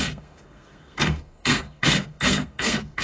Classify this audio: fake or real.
fake